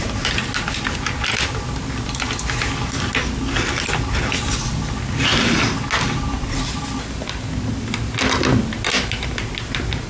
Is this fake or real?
real